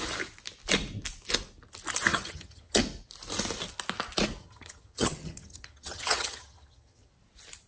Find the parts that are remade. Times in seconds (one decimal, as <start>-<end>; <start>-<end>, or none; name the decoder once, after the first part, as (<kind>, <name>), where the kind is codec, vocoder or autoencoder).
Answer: 2.1-2.8 (vocoder, HiFi-GAN); 4.4-7.1